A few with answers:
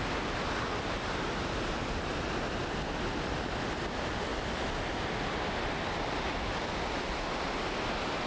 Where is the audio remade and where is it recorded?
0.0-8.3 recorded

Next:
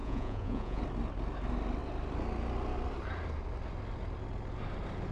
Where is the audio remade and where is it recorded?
0.0-0.8 remade; 0.8-5.1 recorded

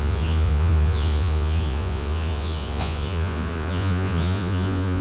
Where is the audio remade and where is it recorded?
0.0-5.0 remade

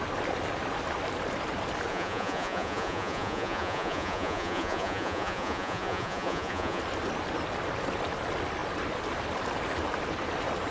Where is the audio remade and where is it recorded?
0.0-1.9 recorded; 1.9-6.8 remade; 6.8-10.7 recorded

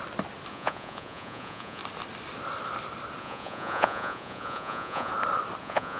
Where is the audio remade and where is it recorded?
0.0-0.5 recorded; 0.5-1.8 remade; 1.8-3.2 recorded; 3.2-5.1 remade; 5.1-5.6 recorded; 5.6-6.0 remade

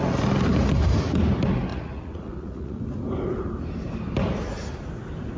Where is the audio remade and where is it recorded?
0.0-1.7 recorded; 1.7-2.8 remade; 2.8-5.4 recorded